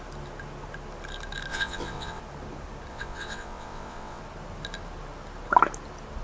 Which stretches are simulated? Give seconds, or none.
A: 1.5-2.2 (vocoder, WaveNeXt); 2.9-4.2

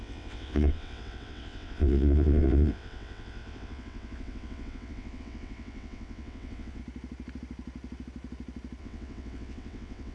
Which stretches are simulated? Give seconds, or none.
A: 0.0-6.8 (vocoder, WaveNeXt); 8.8-10.1

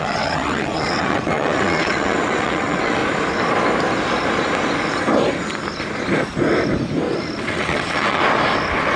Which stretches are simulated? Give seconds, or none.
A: 0.0-3.0 (vocoder, WaveNeXt); 7.4-8.2

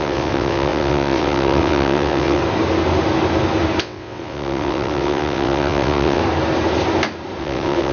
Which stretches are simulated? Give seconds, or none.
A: 0.0-2.4 (vocoder, WaveNeXt); 3.8-6.2; 7.4-7.9

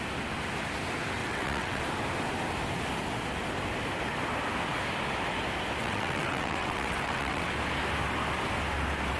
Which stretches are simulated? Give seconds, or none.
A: 1.2-1.8 (vocoder, WaveNeXt); 5.8-7.5